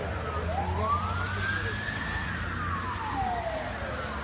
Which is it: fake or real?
real